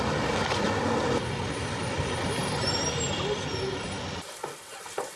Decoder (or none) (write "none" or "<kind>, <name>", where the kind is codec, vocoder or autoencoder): none